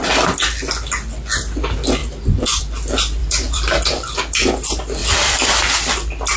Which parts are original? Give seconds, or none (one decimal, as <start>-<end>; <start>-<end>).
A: 0.0-3.2; 4.5-5.0; 5.9-6.4